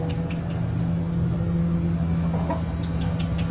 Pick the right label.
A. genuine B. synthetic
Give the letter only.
A